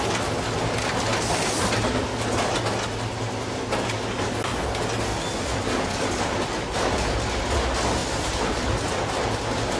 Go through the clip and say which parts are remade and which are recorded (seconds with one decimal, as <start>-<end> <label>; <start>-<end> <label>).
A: 0.0-5.1 recorded; 5.1-7.4 remade; 7.4-8.0 recorded; 8.0-9.2 remade; 9.2-9.8 recorded